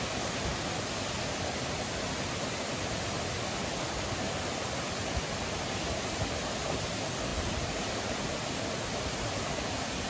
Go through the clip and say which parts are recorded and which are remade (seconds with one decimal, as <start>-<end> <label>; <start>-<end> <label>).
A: 0.0-10.1 recorded